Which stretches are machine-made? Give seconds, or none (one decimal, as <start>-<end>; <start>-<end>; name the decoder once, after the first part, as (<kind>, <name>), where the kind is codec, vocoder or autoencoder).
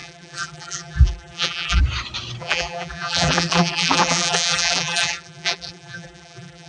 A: 0.0-1.8 (vocoder, BigVGAN v2); 2.4-6.7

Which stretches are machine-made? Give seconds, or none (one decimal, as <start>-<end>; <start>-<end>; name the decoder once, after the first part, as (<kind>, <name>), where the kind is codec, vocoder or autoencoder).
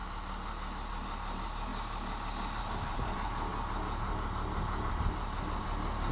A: 0.9-1.7 (vocoder, BigVGAN v2); 2.6-3.5; 4.9-6.1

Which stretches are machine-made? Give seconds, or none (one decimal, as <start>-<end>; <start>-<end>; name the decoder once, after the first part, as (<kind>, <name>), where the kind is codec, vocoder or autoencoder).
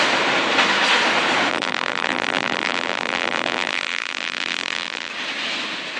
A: 1.5-5.1 (vocoder, BigVGAN v2)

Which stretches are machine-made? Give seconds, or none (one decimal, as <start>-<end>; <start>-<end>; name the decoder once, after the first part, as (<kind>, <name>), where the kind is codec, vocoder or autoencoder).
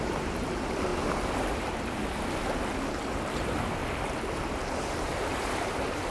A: 0.0-0.9 (vocoder, BigVGAN v2); 1.4-2.0; 3.1-3.8; 4.7-6.1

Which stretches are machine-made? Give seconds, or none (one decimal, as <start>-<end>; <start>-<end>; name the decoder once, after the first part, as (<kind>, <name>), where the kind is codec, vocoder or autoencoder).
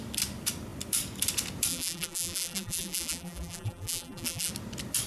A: 1.7-4.5 (vocoder, BigVGAN v2)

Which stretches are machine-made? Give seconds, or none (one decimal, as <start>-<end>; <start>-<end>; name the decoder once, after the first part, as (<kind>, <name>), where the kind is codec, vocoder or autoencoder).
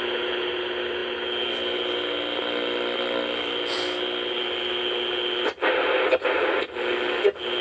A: none